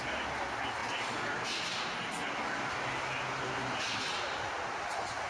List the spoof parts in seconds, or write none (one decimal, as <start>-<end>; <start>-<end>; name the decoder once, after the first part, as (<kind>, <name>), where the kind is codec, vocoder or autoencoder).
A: none